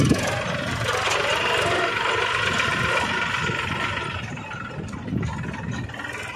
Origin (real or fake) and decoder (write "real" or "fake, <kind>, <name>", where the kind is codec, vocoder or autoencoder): real